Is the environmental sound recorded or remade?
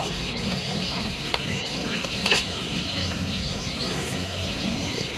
remade